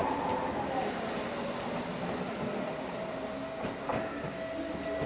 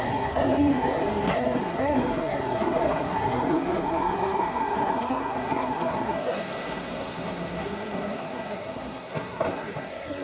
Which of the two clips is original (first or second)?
first